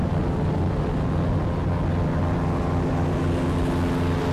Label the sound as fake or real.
real